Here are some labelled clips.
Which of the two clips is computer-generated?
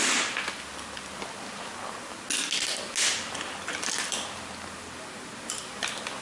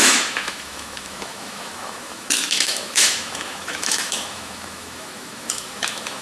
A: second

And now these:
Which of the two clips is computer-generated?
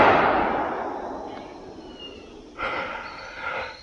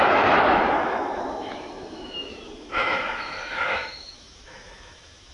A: second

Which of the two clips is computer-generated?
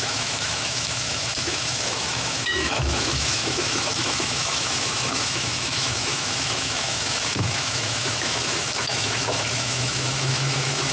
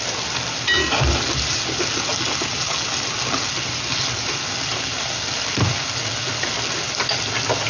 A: first